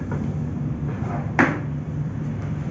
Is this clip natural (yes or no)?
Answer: no